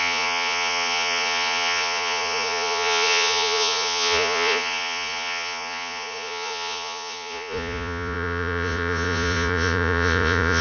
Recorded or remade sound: remade